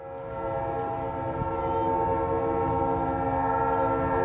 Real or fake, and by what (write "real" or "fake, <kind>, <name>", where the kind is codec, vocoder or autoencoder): real